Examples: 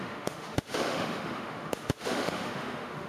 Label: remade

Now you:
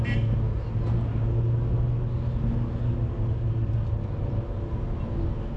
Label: recorded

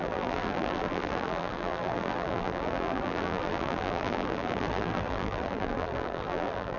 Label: remade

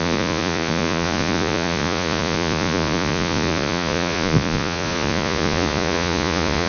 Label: remade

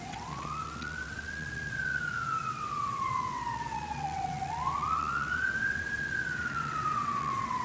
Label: remade